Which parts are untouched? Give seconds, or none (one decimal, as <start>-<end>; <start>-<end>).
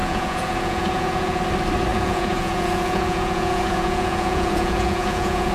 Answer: 1.4-1.9